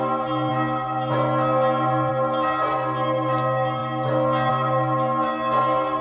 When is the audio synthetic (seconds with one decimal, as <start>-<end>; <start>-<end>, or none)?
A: none